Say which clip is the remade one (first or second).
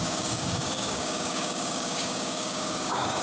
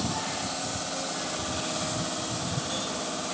first